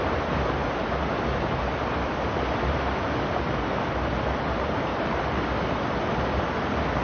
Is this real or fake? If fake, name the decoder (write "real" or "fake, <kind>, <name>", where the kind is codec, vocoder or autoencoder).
real